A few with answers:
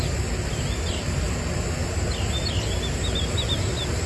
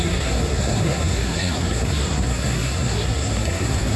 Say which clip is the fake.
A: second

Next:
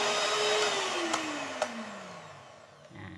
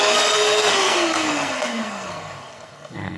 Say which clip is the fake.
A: second